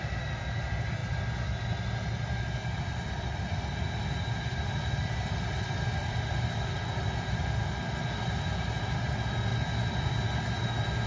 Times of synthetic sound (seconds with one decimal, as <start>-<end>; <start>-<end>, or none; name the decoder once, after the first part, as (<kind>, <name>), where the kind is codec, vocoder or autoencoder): 2.6-3.4 (vocoder, BigVGAN v2); 4.5-7.1